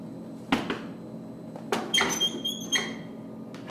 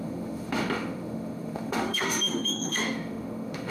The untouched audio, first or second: first